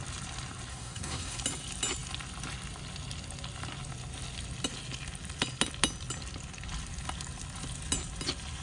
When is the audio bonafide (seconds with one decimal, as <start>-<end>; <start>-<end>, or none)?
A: 0.0-0.7; 1.4-8.6